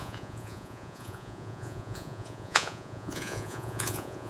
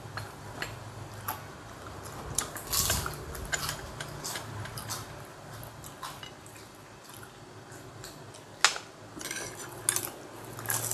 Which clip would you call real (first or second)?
second